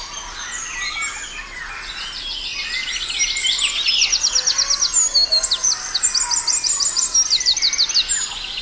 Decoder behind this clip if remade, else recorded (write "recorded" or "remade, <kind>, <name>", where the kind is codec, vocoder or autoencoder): recorded